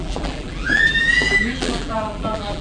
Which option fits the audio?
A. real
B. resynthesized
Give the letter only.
B